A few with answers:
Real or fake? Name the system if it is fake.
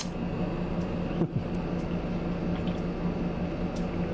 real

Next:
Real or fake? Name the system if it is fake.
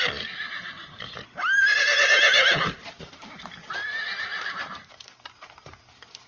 fake, vocoder, BigVGAN v2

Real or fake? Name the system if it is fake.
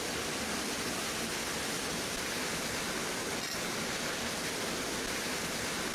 real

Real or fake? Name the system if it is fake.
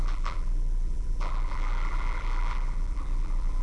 fake, vocoder, BigVGAN v2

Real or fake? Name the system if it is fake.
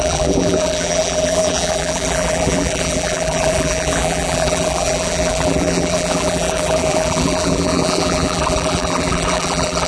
fake, vocoder, BigVGAN v2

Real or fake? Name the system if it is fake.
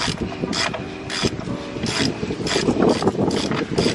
fake, vocoder, BigVGAN v2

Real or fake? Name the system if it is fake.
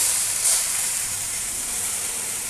fake, vocoder, BigVGAN v2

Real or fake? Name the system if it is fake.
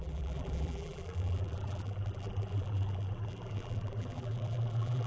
fake, vocoder, BigVGAN v2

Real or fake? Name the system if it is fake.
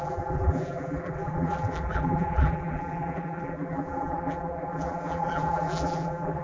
fake, vocoder, BigVGAN v2